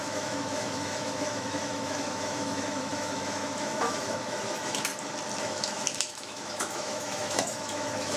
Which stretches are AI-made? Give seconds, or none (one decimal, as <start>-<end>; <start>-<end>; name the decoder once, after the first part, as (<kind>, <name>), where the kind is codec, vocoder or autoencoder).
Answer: 0.0-4.9 (autoencoder, DAC-VAE); 5.4-8.2